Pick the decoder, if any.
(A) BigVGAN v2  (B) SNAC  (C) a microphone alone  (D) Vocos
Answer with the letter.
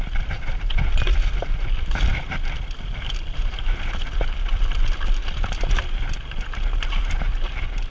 C